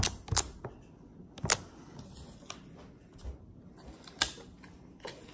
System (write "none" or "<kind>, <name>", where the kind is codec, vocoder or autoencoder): none